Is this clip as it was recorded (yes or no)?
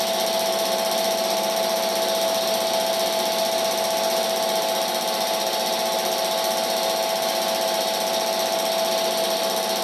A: yes